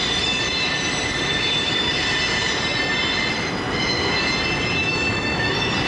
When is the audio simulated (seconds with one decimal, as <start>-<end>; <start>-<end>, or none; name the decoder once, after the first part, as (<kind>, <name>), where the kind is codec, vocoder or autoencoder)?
4.8-5.5 (autoencoder, DAC-VAE)